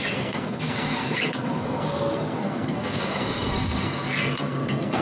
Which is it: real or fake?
fake